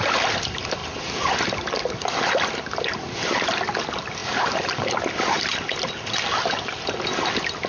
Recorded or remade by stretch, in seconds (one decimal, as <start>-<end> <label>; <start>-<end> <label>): 0.0-7.7 recorded